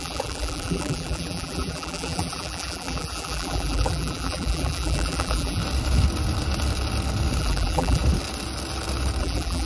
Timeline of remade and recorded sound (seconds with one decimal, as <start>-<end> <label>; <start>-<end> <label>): 0.0-5.6 remade; 5.6-7.4 recorded; 7.4-8.0 remade; 8.0-9.2 recorded; 9.2-9.7 remade